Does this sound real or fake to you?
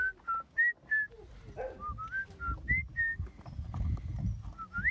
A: real